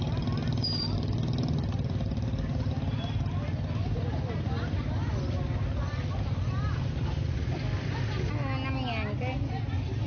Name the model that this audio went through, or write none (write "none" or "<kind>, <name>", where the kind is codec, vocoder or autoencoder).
none